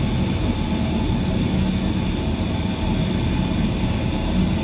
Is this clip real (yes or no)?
yes